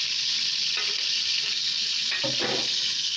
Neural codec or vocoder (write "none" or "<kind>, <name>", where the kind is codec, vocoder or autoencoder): none